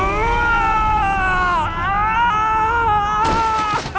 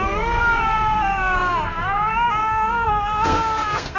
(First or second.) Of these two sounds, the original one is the first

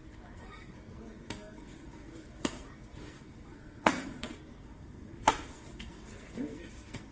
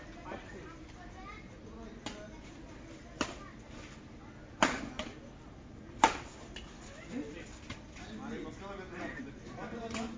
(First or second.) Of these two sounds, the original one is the second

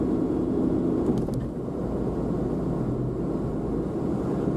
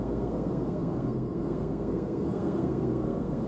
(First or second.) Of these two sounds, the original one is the first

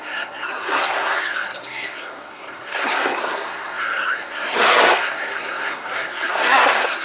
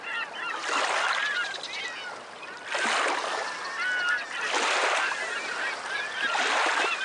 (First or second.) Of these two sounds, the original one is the second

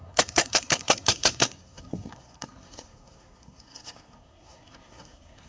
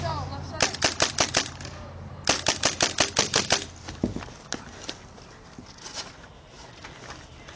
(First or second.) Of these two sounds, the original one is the second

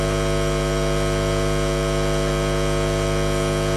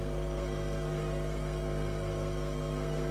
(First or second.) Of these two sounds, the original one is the first